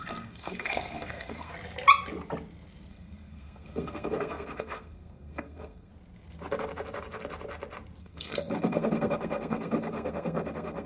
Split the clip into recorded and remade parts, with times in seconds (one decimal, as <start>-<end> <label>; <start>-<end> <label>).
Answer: 0.0-1.5 remade; 1.5-2.9 recorded; 2.9-5.9 remade; 5.9-8.0 recorded; 8.0-10.9 remade